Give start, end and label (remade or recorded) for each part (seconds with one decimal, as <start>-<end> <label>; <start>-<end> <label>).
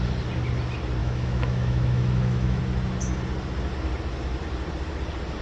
0.0-1.0 recorded; 1.0-2.6 remade; 2.6-5.4 recorded